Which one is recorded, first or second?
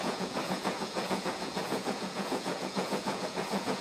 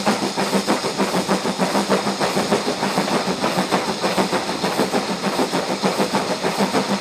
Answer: second